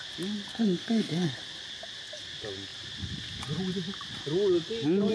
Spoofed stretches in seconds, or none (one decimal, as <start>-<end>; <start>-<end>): 0.5-1.4